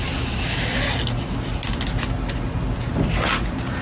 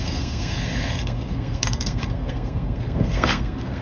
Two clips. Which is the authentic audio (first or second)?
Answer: first